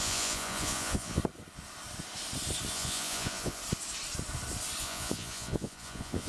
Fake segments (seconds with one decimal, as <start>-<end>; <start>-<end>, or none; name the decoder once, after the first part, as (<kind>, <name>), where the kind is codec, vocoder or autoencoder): 0.0-1.2 (vocoder, Vocos); 2.7-3.6; 4.8-6.3